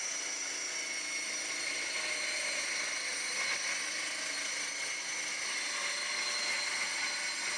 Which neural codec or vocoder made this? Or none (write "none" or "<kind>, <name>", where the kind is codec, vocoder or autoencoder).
none